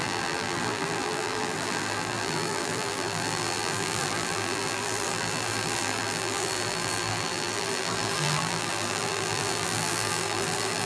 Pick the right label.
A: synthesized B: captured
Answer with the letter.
A